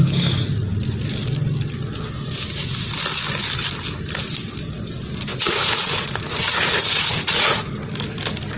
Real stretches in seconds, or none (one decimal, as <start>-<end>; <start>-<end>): 0.0-5.3; 7.7-8.6